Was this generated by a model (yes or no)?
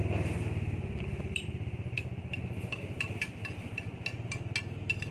no